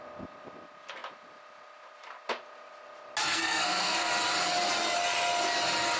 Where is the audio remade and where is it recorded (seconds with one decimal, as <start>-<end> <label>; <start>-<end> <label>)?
0.0-3.2 recorded; 3.2-4.1 remade; 4.1-6.0 recorded